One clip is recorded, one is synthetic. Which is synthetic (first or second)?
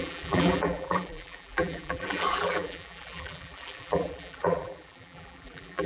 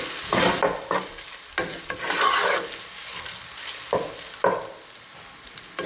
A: first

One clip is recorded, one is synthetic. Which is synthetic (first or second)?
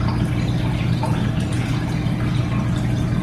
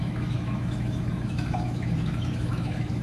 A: second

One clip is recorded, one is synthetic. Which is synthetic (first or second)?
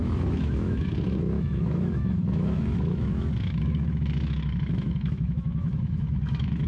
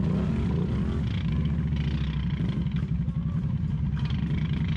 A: first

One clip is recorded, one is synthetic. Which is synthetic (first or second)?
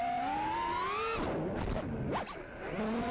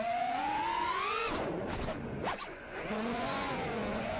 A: second